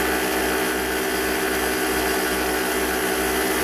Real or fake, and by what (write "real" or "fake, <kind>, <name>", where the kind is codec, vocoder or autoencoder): real